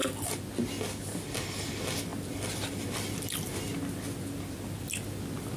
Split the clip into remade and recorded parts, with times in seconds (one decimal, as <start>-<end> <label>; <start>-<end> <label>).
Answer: 0.0-5.6 recorded